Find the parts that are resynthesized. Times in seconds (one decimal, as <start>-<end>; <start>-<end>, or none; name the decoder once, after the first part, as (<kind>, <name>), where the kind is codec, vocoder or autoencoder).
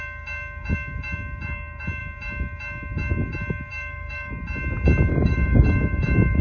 3.7-4.3 (codec, DAC); 5.1-6.4